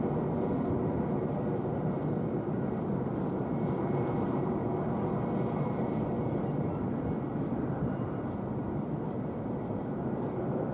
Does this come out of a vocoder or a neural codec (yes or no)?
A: yes